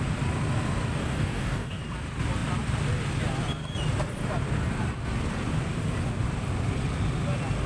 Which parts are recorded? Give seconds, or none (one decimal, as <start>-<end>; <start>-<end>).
0.0-1.0; 1.8-7.7